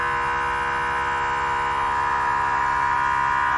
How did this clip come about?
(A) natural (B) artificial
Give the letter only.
A